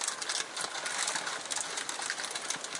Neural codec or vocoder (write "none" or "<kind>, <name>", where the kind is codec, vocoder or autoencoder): none